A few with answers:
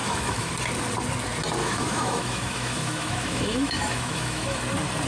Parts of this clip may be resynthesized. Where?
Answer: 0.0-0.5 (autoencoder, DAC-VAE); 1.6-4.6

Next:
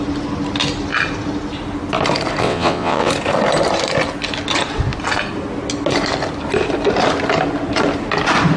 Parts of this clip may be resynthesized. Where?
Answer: 2.4-3.1 (vocoder, WaveNeXt)

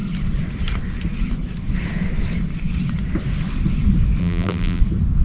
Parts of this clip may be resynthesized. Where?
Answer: 4.2-4.8 (vocoder, BigVGAN v2)